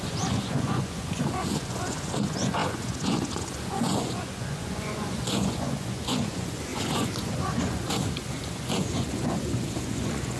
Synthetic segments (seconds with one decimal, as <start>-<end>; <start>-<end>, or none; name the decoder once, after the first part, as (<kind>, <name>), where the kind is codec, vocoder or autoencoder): 0.0-10.4 (vocoder, Vocos)